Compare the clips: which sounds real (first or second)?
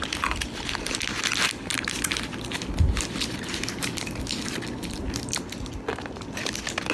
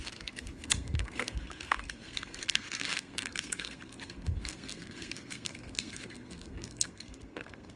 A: first